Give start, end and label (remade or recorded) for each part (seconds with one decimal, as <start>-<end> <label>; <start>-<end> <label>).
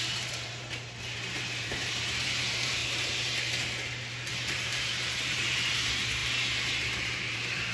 0.0-2.8 remade; 2.8-4.3 recorded; 4.3-7.7 remade